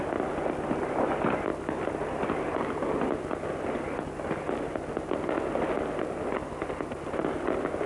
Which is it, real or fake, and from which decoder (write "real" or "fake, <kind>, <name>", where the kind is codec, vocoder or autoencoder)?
real